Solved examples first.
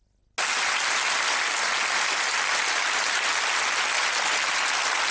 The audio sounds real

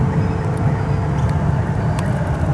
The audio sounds real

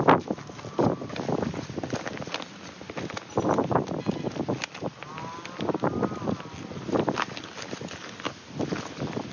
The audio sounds real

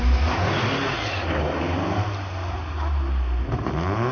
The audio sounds real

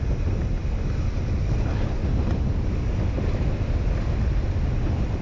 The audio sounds real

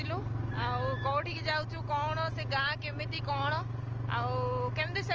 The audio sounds real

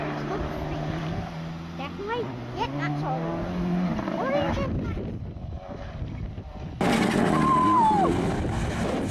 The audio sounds real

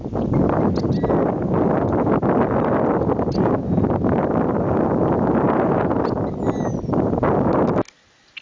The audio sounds real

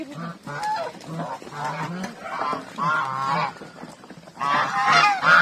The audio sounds real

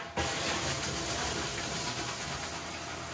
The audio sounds real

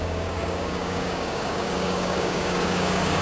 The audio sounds fake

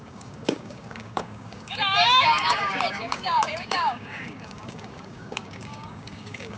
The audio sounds fake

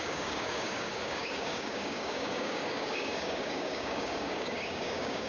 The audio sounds fake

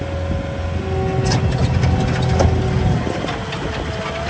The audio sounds real